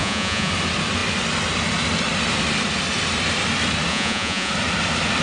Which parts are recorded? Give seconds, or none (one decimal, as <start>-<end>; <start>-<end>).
0.5-3.9; 4.5-5.2